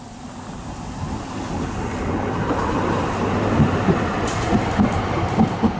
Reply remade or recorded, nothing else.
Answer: recorded